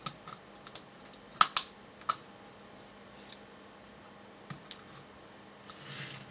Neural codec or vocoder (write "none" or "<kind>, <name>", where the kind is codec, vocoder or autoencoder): none